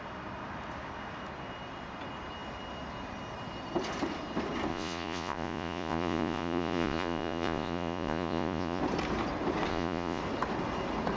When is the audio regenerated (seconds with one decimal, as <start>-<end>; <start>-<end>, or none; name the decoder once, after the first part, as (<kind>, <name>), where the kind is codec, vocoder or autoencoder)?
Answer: 4.7-8.8 (vocoder, Vocos); 9.7-10.2

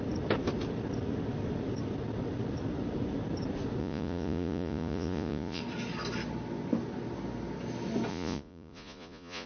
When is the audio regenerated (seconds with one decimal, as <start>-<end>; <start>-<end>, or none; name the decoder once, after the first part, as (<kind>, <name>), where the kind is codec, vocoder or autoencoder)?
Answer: 3.8-5.6 (vocoder, Vocos); 8.1-9.5

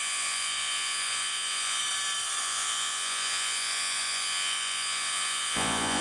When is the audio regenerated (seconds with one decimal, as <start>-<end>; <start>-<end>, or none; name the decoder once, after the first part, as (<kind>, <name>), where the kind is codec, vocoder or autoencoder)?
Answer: 0.0-1.8 (vocoder, Vocos); 2.4-6.0

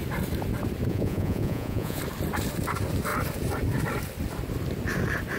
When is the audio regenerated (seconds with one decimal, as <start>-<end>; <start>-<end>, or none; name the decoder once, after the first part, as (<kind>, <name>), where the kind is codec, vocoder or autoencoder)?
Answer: 0.9-2.0 (vocoder, Vocos)

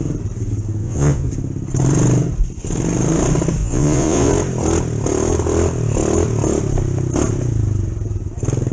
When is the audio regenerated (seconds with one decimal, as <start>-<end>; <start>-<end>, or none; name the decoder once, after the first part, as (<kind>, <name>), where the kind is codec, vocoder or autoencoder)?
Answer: 0.8-1.3 (vocoder, Vocos); 3.6-4.3

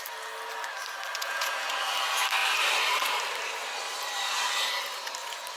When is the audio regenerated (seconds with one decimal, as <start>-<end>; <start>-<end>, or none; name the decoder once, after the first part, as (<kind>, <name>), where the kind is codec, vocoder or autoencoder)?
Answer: 1.2-1.7 (vocoder, Vocos)

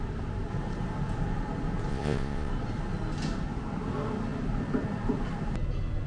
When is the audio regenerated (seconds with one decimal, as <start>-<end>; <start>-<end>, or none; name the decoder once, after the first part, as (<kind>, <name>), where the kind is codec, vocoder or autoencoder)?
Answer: 1.9-2.5 (vocoder, Vocos)